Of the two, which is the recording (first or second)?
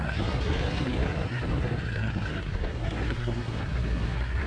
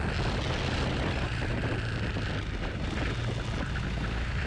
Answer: second